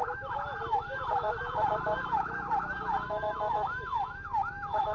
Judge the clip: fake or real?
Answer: fake